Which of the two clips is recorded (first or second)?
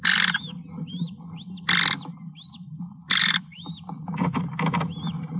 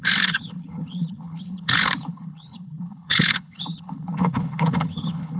first